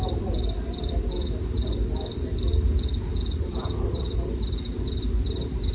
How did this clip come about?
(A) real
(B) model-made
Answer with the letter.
A